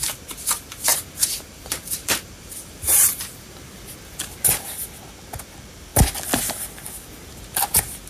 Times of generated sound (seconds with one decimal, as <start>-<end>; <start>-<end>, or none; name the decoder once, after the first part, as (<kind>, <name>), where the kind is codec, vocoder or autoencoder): 0.9-4.7 (vocoder, BigVGAN v2)